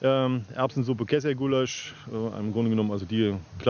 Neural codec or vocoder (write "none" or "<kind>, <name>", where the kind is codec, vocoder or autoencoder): none